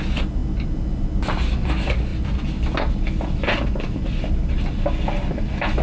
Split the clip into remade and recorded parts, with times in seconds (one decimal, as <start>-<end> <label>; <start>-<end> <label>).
0.0-5.8 recorded